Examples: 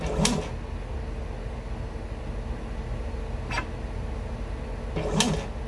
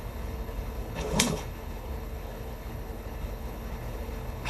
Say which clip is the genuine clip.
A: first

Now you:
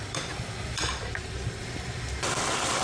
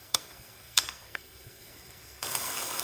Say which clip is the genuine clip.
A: first